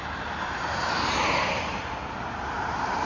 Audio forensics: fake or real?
real